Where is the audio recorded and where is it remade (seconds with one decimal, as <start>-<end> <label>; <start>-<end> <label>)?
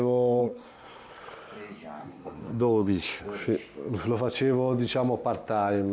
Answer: 0.0-0.4 recorded; 0.4-1.1 remade; 1.1-2.0 recorded; 2.0-3.2 remade; 3.2-5.9 recorded